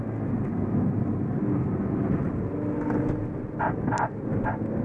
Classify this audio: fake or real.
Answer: real